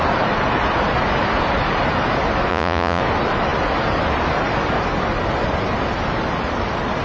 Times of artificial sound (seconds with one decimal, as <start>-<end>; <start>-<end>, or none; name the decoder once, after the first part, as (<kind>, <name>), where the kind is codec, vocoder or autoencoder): 2.5-3.0 (vocoder, Vocos)